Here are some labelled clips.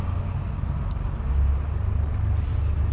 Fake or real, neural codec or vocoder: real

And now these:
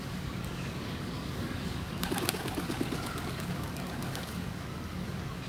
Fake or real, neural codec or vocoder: fake, codec, DAC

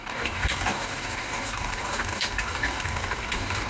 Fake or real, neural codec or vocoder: fake, codec, DAC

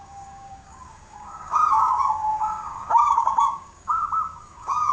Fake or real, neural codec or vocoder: fake, codec, DAC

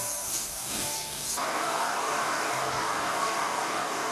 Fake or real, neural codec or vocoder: fake, codec, DAC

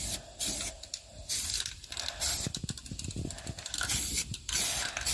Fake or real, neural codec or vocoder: real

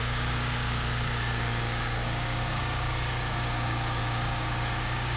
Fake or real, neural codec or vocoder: fake, codec, DAC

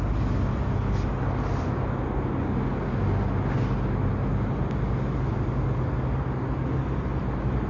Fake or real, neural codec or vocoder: real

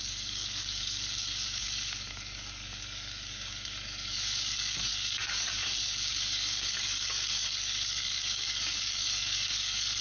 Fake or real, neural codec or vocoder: fake, codec, DAC